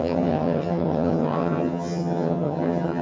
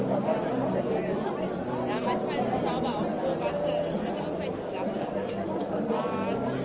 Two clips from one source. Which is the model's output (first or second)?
first